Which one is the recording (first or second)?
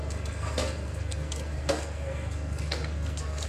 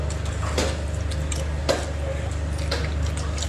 second